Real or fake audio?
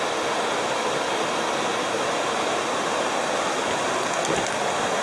real